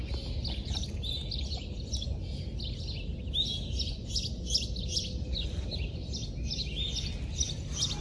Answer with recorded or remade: recorded